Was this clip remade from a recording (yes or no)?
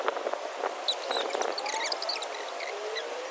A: no